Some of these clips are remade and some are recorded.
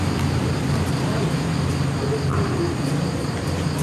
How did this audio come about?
recorded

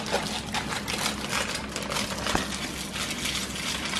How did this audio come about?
recorded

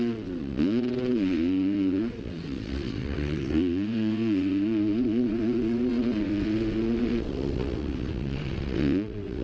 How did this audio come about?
remade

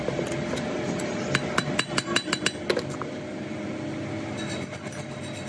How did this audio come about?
recorded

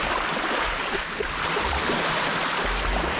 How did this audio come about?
recorded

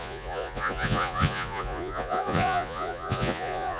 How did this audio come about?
remade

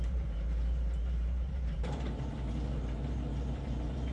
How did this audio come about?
remade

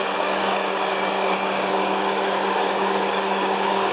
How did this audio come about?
remade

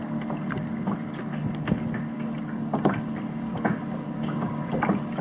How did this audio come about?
recorded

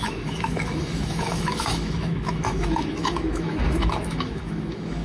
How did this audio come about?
remade